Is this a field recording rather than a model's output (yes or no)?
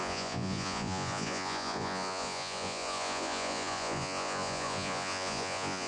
no